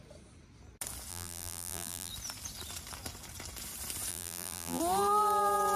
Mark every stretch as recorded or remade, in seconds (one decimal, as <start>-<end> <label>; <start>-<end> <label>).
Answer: 0.0-1.1 recorded; 1.1-2.1 remade; 2.1-4.1 recorded; 4.1-4.8 remade; 4.8-5.8 recorded